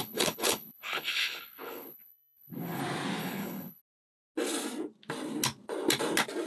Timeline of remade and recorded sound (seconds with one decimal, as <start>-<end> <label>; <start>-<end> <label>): 0.0-2.8 remade; 2.8-3.2 recorded; 3.2-3.8 remade; 3.8-6.5 recorded